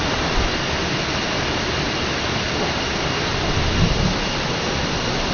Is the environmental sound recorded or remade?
recorded